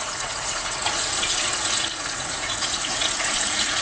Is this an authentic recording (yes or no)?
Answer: no